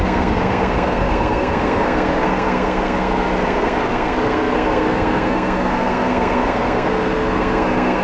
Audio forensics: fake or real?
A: fake